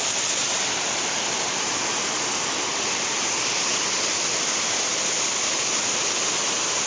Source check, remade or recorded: recorded